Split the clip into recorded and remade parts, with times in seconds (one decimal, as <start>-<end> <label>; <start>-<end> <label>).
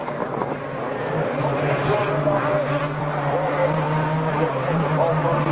0.0-1.1 recorded; 1.1-2.0 remade; 2.0-3.0 recorded; 3.0-3.6 remade; 3.6-4.3 recorded; 4.3-5.5 remade